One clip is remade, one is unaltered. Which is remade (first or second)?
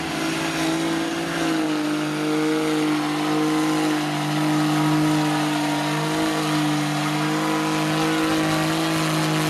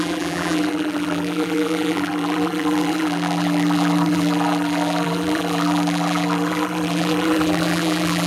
second